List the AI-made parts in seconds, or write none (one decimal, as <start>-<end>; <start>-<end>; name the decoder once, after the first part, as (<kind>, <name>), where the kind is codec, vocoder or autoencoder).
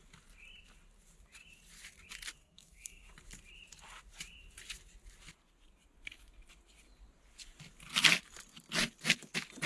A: 2.4-3.1 (codec, SNAC)